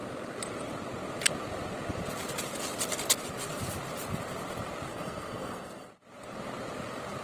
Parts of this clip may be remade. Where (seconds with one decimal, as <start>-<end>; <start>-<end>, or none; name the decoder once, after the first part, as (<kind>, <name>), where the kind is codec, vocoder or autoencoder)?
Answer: 4.9-5.9 (codec, SNAC)